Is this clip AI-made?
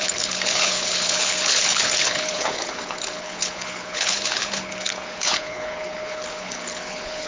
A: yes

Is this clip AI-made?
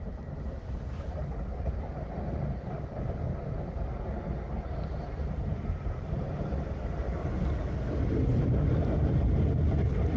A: no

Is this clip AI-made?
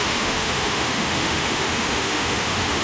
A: yes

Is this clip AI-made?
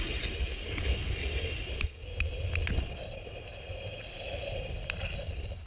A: no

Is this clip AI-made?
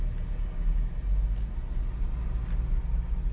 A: no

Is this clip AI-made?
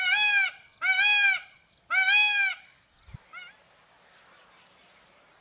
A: no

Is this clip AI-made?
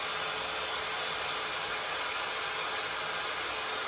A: no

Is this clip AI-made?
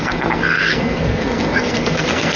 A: yes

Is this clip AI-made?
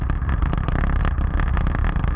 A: no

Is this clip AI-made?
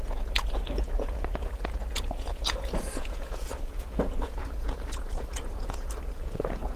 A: yes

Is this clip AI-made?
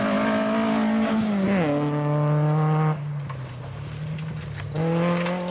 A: no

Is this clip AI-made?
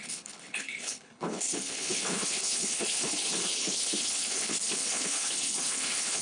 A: yes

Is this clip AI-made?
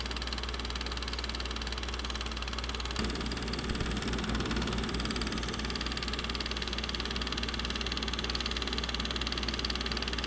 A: no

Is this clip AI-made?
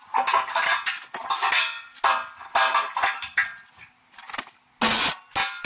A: no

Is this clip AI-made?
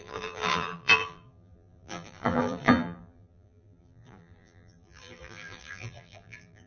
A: yes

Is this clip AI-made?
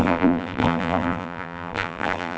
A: yes